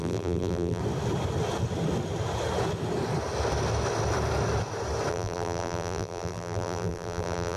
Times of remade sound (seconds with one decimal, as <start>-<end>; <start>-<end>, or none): 0.0-0.8; 5.1-7.6